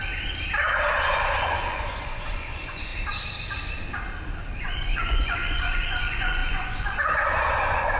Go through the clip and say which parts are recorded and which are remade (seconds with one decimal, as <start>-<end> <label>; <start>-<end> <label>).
0.0-1.1 recorded; 1.1-2.9 remade; 2.9-4.6 recorded; 4.6-8.0 remade